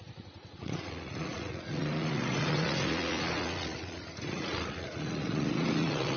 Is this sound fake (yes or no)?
yes